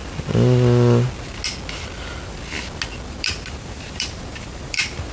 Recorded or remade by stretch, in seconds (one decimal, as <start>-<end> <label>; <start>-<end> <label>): 0.0-3.1 recorded; 3.1-5.1 remade